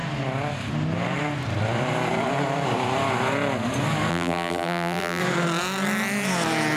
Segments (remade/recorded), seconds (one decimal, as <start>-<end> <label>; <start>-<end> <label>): 0.0-4.1 recorded; 4.1-5.2 remade; 5.2-6.8 recorded